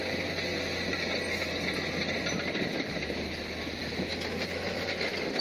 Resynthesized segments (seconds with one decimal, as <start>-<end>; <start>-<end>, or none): none